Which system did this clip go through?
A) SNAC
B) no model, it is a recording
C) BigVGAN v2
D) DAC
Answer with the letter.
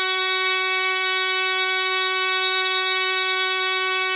A